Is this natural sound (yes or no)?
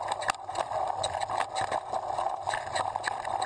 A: yes